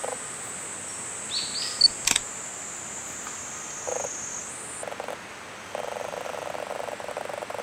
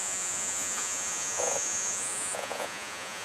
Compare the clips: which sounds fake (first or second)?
second